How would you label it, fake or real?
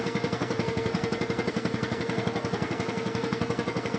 fake